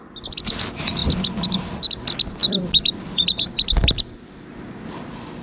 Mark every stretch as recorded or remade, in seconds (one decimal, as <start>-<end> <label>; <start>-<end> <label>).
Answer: 0.0-1.0 recorded; 1.0-1.9 remade; 1.9-2.4 recorded; 2.4-4.9 remade; 4.9-5.4 recorded